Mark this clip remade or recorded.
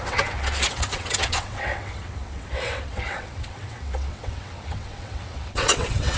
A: remade